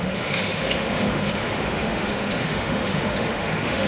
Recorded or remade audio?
remade